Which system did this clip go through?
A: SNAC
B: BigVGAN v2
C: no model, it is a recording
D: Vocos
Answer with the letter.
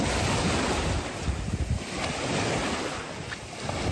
C